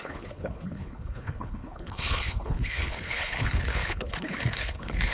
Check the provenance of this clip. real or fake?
fake